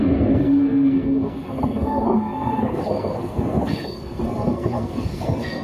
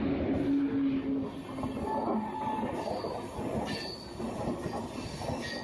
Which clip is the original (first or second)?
second